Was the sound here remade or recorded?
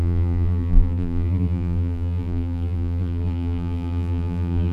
remade